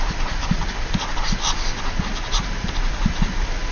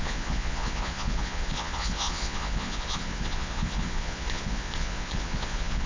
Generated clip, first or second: second